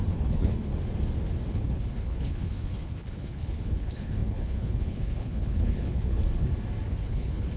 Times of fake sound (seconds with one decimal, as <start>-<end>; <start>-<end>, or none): 0.0-0.7; 1.5-6.2; 6.9-7.6